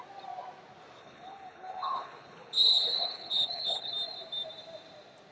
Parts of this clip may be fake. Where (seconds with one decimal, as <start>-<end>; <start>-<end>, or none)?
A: 1.0-3.9